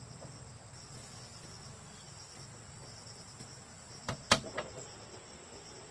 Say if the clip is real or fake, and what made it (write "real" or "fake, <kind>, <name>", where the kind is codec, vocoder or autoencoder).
real